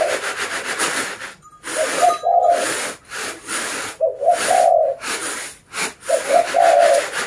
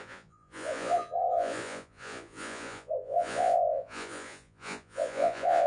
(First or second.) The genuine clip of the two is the first